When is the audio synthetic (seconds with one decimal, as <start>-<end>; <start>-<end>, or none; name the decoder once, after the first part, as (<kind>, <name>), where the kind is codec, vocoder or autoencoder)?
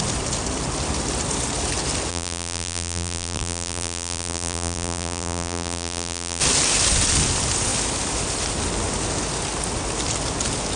2.1-6.4 (vocoder, BigVGAN v2)